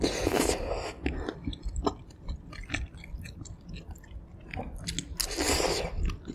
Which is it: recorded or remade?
recorded